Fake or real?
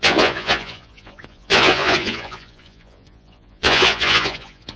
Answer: fake